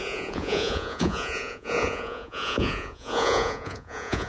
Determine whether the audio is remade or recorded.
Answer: remade